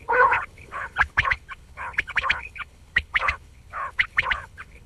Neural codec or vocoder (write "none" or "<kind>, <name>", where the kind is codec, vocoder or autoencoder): codec, HILCodec